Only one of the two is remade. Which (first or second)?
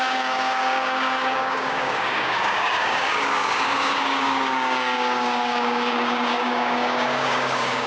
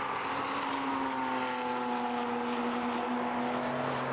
first